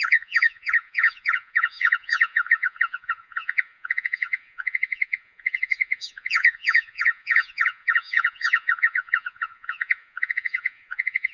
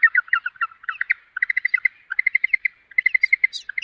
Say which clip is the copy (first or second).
first